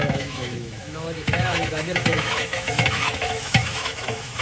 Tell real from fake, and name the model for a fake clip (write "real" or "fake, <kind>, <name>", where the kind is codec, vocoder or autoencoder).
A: fake, autoencoder, DAC-VAE